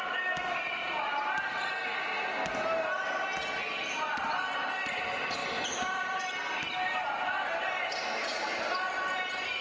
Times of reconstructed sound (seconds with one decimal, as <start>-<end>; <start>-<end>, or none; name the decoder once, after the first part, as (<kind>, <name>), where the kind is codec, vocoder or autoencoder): none